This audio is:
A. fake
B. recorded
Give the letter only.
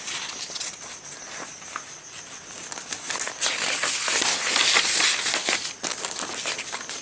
B